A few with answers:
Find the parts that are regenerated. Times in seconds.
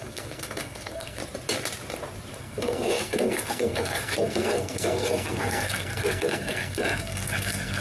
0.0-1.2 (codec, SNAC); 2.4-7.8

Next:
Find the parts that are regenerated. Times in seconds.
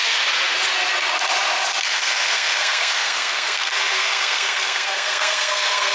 1.9-5.9 (codec, SNAC)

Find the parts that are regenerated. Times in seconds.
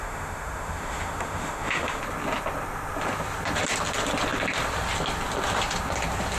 0.0-2.0 (autoencoder, DAC-VAE)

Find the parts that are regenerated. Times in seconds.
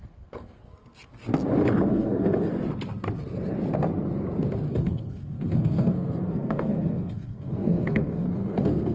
0.0-0.6 (codec, SNAC); 1.9-2.5; 4.7-8.9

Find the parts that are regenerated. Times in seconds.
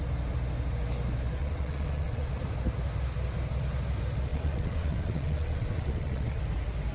1.4-2.3 (vocoder, WaveNeXt); 4.3-6.4